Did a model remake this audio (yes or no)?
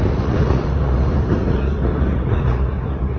yes